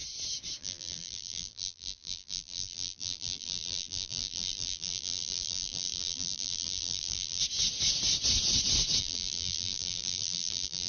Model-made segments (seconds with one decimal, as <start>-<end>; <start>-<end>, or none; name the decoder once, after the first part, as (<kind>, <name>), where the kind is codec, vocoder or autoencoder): 0.6-7.4 (vocoder, BigVGAN v2); 9.0-10.9